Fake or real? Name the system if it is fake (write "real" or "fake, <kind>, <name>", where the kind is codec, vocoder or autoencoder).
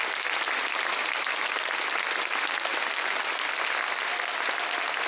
real